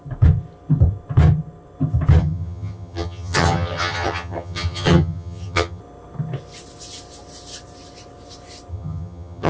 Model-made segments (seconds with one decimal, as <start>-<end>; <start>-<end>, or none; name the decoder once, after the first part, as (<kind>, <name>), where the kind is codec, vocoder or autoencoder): 2.2-5.8 (vocoder, HiFi-GAN); 8.7-9.5